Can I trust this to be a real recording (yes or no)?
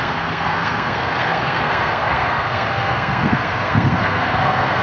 no